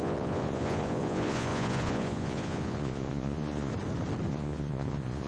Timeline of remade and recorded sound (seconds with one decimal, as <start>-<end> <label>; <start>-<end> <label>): 0.0-3.7 remade; 3.7-4.3 recorded; 4.3-5.3 remade